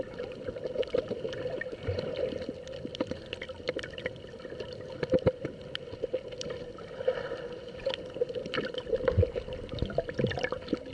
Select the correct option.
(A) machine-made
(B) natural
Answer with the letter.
B